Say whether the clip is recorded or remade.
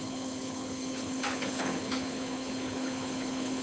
remade